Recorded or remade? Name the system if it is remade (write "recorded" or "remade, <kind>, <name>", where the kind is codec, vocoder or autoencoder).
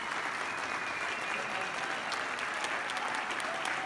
recorded